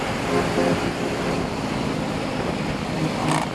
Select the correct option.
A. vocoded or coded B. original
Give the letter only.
B